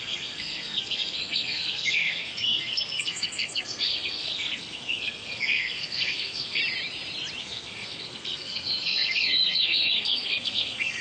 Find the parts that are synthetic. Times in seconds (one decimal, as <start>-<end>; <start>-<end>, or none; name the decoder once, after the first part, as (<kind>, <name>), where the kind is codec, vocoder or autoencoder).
0.0-6.6 (codec, SNAC); 7.4-11.0